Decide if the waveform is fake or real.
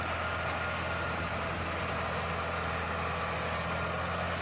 real